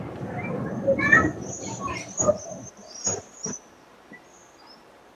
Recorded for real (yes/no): no